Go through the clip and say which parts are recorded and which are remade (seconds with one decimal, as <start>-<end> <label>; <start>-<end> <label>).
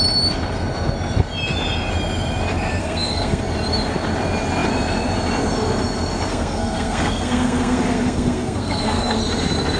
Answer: 0.0-2.8 recorded; 2.8-3.4 remade; 3.4-6.3 recorded; 6.3-9.2 remade; 9.2-9.8 recorded